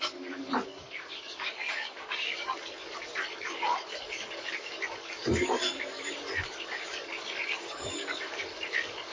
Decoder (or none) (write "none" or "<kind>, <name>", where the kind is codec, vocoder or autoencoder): codec, DAC